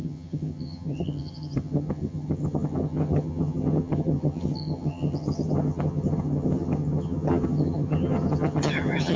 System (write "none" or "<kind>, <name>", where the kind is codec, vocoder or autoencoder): vocoder, HiFi-GAN